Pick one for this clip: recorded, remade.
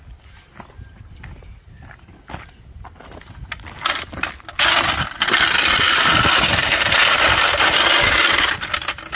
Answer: recorded